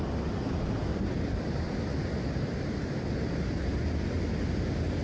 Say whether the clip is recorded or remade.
recorded